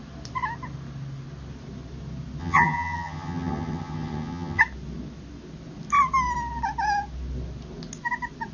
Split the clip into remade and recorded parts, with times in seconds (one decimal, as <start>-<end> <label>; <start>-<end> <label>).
0.0-2.4 recorded; 2.4-4.6 remade; 4.6-8.5 recorded